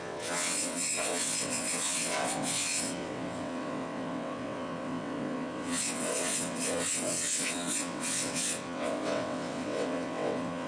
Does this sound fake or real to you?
fake